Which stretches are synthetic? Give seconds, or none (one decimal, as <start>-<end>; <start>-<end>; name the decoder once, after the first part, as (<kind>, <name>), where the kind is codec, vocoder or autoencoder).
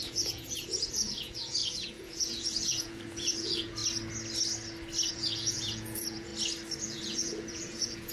0.0-3.8 (vocoder, Vocos); 5.1-6.3; 6.8-8.1